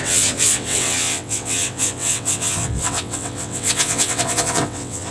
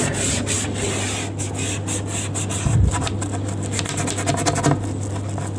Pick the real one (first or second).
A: second